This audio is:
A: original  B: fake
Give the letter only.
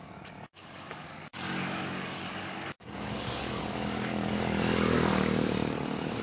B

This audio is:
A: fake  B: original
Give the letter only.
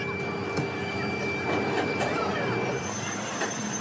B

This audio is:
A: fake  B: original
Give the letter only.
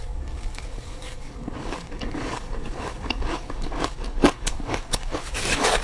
A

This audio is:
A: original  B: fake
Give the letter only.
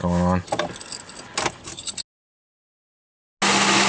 A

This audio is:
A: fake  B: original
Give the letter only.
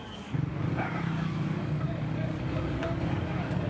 A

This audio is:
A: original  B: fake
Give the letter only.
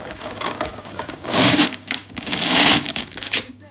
B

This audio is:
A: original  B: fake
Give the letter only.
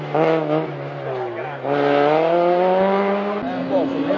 A